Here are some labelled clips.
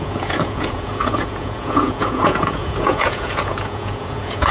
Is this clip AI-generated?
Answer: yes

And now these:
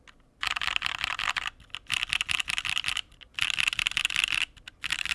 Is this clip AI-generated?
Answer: no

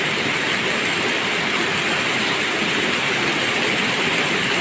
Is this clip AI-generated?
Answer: no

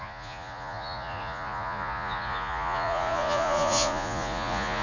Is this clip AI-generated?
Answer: yes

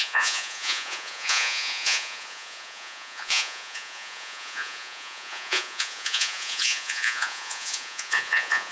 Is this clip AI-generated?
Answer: yes